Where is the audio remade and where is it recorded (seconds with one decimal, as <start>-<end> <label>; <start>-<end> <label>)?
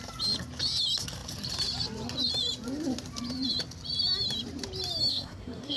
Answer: 0.0-5.1 recorded; 5.1-5.8 remade